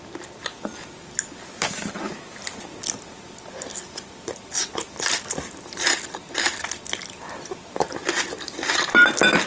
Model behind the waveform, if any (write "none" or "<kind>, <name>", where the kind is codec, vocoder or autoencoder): none